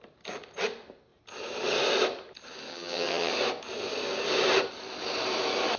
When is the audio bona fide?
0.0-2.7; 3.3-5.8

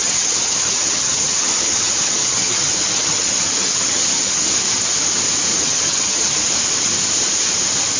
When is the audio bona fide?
4.5-5.5; 6.4-8.0

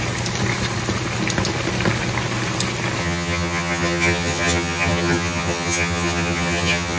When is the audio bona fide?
0.0-3.0

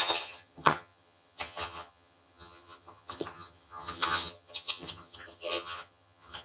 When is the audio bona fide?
none